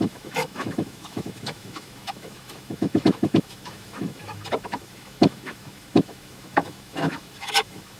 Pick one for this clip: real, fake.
fake